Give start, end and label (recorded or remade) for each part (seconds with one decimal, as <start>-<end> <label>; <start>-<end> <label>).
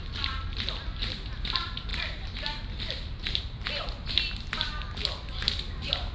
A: 0.0-1.9 recorded; 1.9-3.4 remade; 3.4-6.1 recorded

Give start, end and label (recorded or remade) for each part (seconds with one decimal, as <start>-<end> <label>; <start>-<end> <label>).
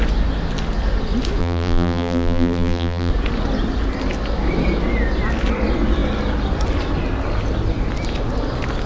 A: 0.0-1.4 recorded; 1.4-3.1 remade; 3.1-8.9 recorded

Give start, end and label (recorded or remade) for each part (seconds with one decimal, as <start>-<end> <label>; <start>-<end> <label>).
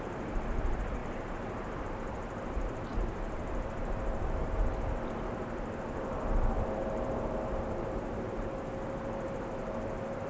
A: 0.0-10.3 remade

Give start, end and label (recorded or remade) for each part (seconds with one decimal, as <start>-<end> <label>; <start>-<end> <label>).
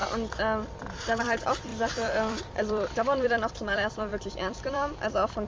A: 0.0-1.2 recorded; 1.2-5.5 remade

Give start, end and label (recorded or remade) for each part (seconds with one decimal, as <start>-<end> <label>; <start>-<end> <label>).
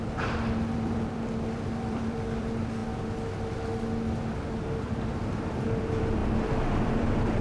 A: 0.0-2.8 remade; 2.8-4.5 recorded; 4.5-7.4 remade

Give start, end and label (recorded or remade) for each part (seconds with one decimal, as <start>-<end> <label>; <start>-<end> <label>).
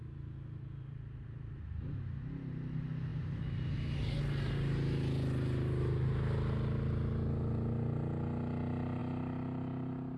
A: 0.0-1.8 remade; 1.8-3.1 recorded; 3.1-4.2 remade; 4.2-10.2 recorded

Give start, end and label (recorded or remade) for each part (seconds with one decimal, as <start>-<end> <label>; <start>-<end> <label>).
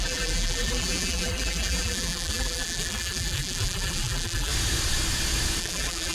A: 0.0-4.5 remade; 4.5-5.6 recorded; 5.6-6.1 remade